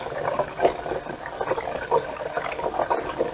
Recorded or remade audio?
recorded